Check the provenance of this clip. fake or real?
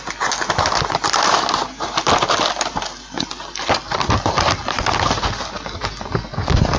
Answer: real